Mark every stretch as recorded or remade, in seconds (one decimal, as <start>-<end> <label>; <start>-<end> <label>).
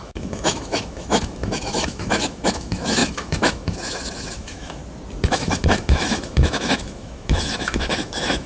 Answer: 0.0-4.8 remade; 4.8-5.3 recorded; 5.3-8.5 remade